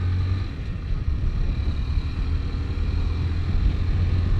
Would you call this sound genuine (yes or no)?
yes